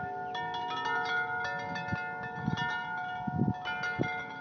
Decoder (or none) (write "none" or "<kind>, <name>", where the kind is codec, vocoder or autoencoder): none